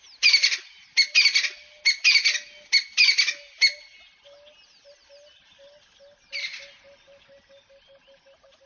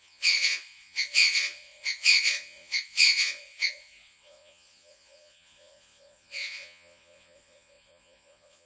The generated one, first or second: second